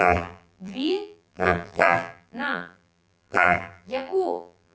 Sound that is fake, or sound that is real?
fake